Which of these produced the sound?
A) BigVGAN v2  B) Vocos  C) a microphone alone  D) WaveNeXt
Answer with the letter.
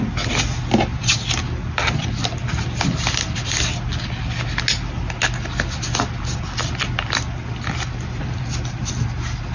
C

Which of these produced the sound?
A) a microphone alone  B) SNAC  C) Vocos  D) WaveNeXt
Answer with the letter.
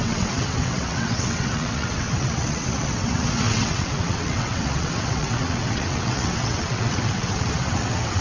D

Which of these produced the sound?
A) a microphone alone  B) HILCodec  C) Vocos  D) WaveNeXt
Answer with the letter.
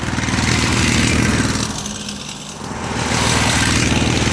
A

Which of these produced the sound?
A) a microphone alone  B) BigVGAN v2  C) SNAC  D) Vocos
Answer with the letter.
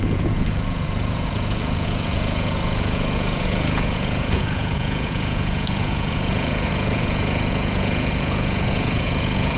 D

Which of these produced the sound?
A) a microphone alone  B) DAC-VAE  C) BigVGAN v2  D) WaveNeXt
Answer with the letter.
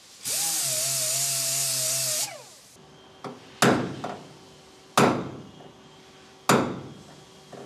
A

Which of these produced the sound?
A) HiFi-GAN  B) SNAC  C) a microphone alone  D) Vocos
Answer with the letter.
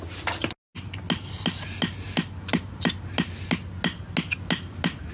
C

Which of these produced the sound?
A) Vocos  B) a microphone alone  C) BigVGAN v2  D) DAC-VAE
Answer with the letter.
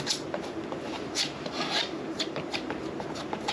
C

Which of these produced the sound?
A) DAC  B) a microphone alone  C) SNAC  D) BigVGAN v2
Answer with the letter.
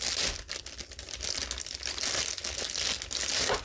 B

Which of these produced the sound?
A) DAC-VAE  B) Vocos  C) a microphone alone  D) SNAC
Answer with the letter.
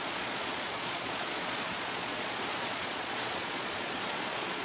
B